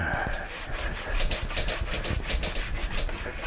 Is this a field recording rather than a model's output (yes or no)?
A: yes